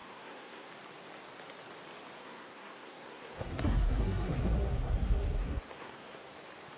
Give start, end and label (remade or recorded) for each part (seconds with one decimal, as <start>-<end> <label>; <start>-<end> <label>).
0.0-0.7 remade; 0.7-2.2 recorded; 2.2-6.3 remade; 6.3-6.8 recorded